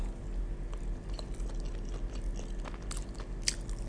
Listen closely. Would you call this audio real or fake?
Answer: real